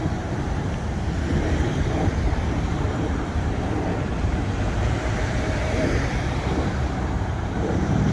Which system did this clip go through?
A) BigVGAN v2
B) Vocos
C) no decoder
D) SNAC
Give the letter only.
A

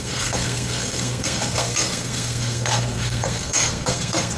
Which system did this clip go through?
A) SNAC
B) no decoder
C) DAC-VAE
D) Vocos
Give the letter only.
A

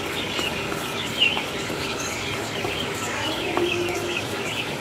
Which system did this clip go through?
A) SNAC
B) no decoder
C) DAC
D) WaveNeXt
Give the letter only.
C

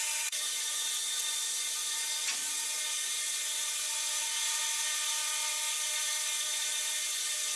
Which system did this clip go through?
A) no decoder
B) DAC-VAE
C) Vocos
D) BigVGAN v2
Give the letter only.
C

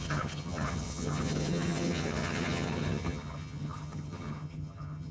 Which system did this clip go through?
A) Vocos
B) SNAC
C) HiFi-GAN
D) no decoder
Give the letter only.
C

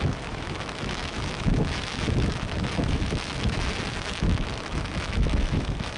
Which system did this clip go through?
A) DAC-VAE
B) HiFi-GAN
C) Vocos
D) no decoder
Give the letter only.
A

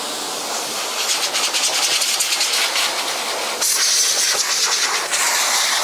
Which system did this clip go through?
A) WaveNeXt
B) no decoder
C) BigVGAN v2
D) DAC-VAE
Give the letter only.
B